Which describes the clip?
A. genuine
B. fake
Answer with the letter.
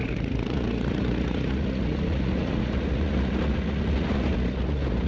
B